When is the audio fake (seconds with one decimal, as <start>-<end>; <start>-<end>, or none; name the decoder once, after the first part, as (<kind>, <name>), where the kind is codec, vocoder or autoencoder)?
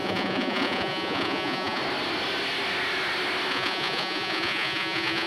0.0-1.8 (vocoder, Vocos); 3.5-5.3